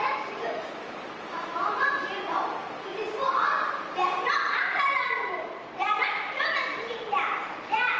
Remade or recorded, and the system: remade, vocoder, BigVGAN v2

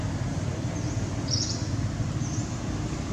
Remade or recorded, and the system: recorded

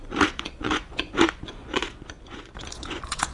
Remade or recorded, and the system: remade, vocoder, Vocos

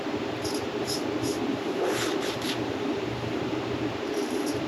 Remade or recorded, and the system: remade, vocoder, BigVGAN v2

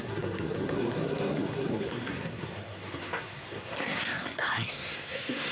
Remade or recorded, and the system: remade, codec, SNAC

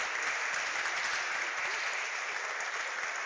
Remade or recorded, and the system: recorded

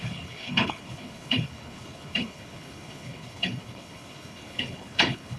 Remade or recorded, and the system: remade, codec, HILCodec